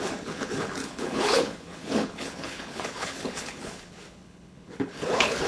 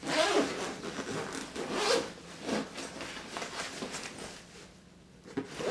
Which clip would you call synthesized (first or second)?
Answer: first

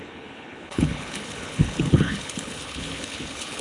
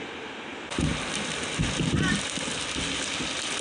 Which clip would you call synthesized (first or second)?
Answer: first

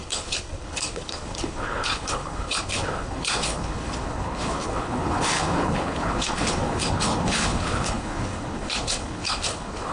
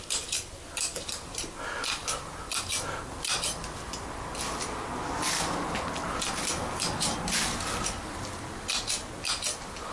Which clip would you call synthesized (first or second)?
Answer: first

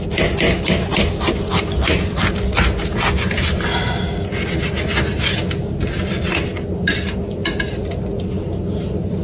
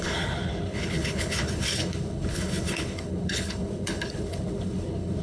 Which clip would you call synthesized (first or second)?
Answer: second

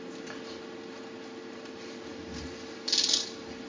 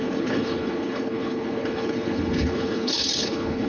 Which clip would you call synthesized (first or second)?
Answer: second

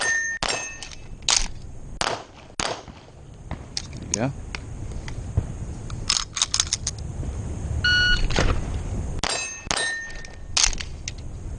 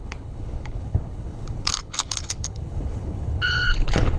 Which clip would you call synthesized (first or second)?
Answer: second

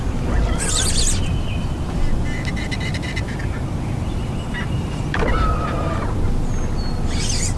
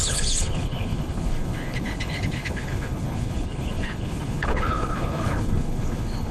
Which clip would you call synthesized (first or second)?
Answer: second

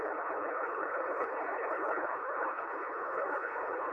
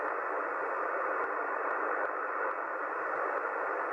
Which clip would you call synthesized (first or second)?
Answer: first